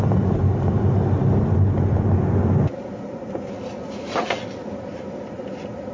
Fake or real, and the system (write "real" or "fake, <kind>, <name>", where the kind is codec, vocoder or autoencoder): real